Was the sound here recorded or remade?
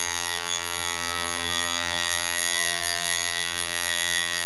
remade